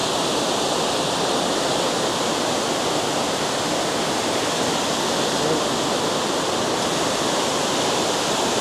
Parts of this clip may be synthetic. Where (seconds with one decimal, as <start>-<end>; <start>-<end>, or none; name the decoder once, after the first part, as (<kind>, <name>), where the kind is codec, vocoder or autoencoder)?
0.0-5.2 (vocoder, BigVGAN v2)